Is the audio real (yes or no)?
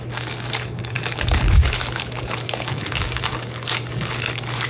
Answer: no